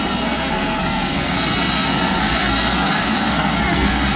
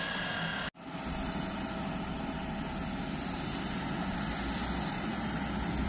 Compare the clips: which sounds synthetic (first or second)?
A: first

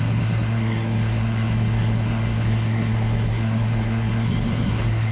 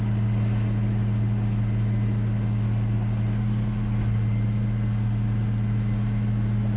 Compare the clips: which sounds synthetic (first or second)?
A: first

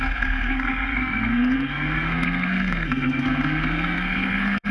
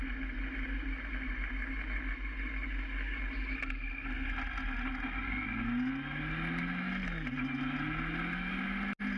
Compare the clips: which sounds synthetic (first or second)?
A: first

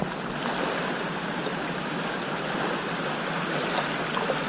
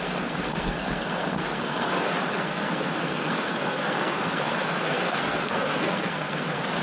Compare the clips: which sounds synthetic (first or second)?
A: second